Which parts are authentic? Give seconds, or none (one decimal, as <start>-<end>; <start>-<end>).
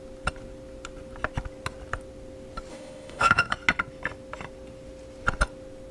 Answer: 0.0-2.7; 3.5-5.9